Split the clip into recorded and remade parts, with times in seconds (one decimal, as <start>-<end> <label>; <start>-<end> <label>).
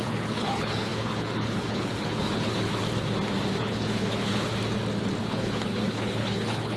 0.0-2.8 remade; 2.8-3.6 recorded; 3.6-4.5 remade; 4.5-5.2 recorded; 5.2-6.8 remade